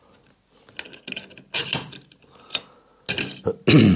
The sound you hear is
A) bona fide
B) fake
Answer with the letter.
A